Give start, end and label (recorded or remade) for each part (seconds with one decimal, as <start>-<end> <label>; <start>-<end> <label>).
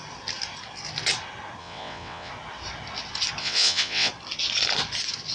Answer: 0.0-1.6 recorded; 1.6-2.3 remade; 2.3-3.4 recorded; 3.4-4.1 remade; 4.1-5.3 recorded